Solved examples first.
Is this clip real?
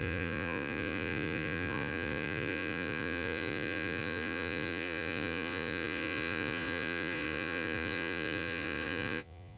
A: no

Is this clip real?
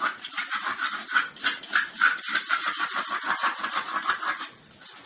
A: yes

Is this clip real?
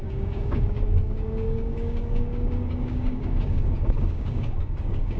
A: no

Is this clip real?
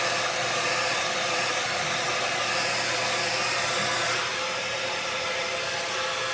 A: yes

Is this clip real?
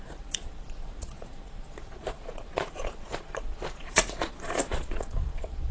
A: no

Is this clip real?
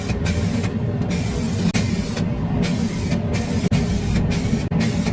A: yes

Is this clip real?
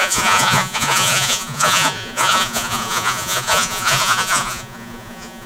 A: no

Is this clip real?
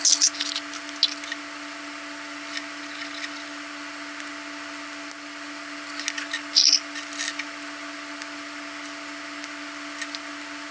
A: yes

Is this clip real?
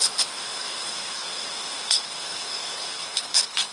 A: no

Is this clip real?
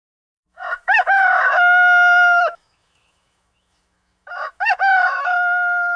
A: no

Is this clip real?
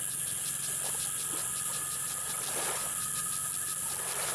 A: yes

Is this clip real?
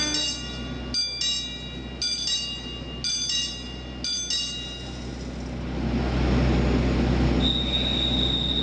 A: yes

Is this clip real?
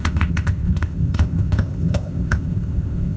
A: no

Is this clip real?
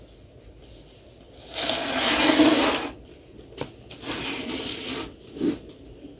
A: yes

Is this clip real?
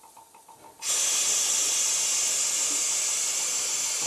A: yes